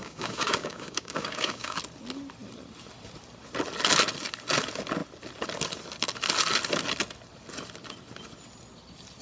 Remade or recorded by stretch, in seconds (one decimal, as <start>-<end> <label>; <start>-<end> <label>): 0.0-1.8 remade; 1.8-9.2 recorded